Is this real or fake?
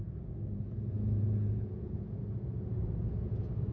fake